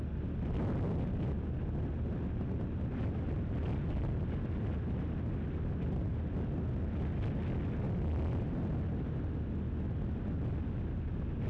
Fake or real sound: real